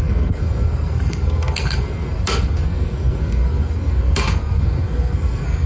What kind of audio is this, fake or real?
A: fake